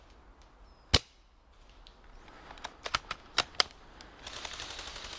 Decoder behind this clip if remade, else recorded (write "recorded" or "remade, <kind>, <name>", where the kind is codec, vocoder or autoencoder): recorded